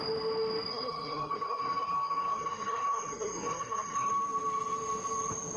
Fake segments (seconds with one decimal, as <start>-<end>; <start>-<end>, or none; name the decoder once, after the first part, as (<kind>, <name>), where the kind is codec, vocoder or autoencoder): 0.7-4.1 (codec, SNAC)

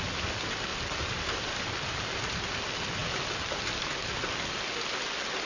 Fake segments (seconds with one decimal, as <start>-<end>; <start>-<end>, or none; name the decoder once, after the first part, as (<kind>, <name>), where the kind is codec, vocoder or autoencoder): none

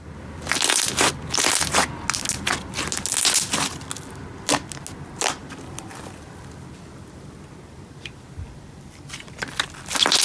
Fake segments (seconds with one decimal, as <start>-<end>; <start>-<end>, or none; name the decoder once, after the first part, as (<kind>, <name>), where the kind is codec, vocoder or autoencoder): 5.4-10.2 (vocoder, BigVGAN v2)

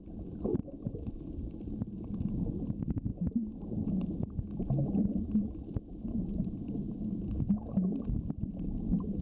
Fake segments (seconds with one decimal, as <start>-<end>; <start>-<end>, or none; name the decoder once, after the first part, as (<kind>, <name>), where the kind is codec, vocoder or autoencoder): 0.5-1.2 (autoencoder, DAC-VAE); 3.1-4.3; 5.1-7.5

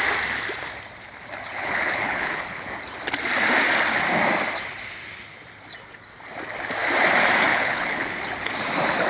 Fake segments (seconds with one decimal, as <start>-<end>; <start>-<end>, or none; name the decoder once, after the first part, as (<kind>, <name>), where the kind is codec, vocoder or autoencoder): 1.6-2.7 (codec, HILCodec); 7.5-8.2

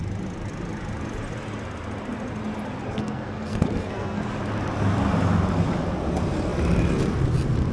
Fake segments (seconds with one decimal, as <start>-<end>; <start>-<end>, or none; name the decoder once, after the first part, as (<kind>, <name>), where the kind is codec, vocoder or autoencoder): 2.9-4.3 (codec, SNAC)

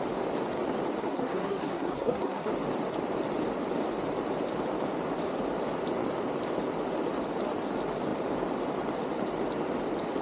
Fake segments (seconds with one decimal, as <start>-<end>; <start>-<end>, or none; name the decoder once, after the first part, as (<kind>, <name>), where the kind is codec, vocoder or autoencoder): 1.0-2.5 (codec, SNAC)